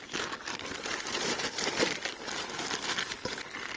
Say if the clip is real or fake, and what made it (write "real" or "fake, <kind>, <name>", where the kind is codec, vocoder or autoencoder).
real